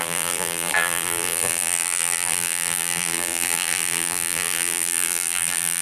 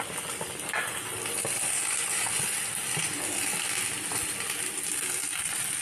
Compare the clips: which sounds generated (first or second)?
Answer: first